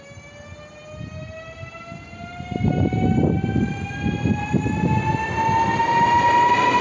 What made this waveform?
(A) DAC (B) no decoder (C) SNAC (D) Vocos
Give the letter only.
B